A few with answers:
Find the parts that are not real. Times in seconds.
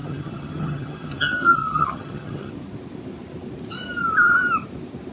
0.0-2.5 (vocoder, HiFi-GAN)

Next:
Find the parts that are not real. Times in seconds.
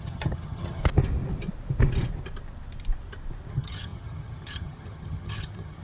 0.0-0.8 (vocoder, HiFi-GAN); 3.5-5.8